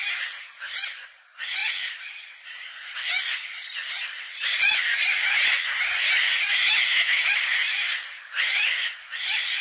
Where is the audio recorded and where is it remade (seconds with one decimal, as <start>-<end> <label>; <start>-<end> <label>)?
0.0-9.6 recorded